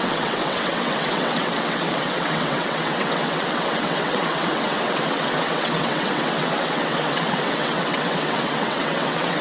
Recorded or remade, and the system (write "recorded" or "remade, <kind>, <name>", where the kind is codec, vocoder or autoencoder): remade, vocoder, WaveNeXt